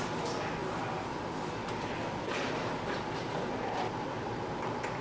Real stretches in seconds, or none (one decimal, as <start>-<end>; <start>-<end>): 0.0-5.0